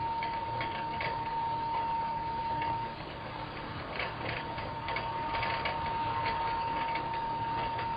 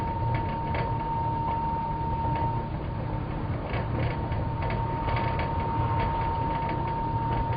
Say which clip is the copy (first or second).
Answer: first